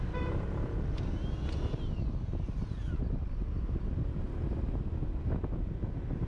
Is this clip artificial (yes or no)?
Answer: no